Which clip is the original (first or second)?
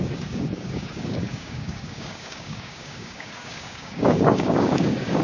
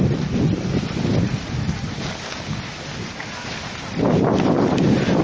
second